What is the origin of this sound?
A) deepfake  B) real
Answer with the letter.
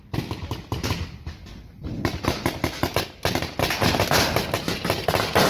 B